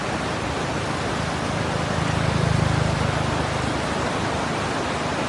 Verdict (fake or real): real